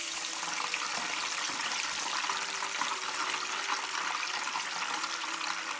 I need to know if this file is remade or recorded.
remade